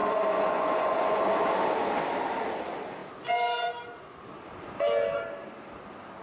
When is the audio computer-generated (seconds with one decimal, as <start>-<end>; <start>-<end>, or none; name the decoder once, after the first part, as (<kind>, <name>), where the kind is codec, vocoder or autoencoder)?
0.0-1.2 (vocoder, Vocos)

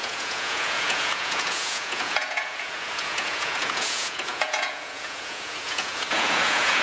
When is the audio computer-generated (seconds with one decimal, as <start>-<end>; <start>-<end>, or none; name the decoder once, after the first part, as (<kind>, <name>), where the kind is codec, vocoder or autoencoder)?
0.0-6.8 (vocoder, Vocos)

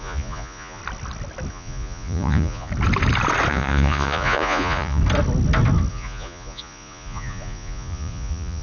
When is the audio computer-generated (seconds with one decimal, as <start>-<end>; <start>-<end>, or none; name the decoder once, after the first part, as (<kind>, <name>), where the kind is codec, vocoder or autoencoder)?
0.0-0.8 (vocoder, Vocos); 1.5-2.7; 3.5-5.0; 5.9-8.6